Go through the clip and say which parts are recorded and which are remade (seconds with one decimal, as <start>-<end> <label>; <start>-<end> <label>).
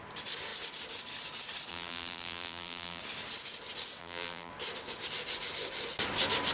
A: 0.0-1.7 recorded; 1.7-3.0 remade; 3.0-4.0 recorded; 4.0-4.5 remade; 4.5-6.5 recorded